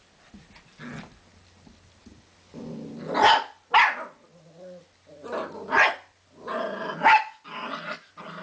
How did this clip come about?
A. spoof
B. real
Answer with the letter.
B